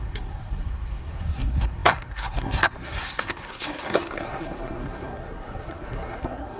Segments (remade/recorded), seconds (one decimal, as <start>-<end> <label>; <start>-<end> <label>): 0.0-6.6 remade